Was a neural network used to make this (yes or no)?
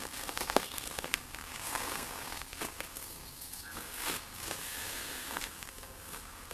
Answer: yes